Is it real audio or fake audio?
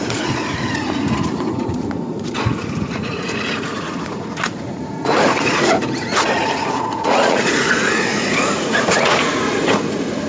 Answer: fake